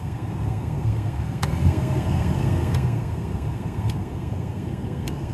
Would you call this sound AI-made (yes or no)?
yes